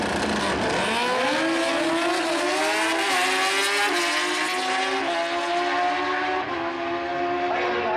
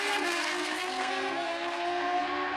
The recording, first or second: first